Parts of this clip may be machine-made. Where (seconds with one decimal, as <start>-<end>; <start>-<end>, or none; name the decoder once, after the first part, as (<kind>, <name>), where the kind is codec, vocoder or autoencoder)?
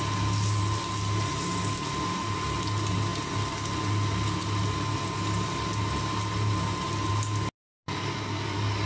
none